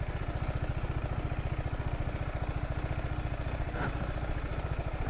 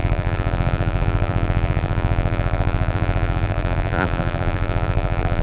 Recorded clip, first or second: first